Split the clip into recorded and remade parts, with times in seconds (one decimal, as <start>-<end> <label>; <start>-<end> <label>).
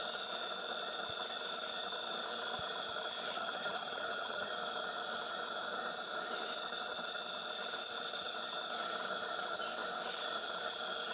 0.0-3.3 recorded; 3.3-4.5 remade; 4.5-11.1 recorded